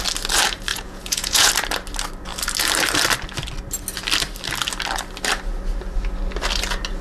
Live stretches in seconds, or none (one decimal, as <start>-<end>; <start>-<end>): 0.0-0.7; 1.5-7.0